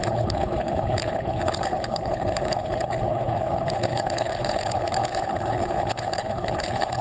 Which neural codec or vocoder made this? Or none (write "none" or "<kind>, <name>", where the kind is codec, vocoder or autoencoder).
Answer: codec, HILCodec